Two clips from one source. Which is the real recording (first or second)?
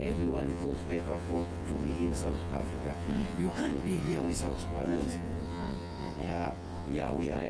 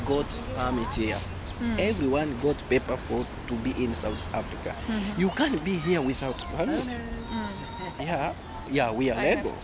second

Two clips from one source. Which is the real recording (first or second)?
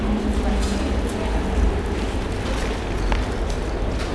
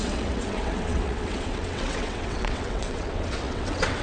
first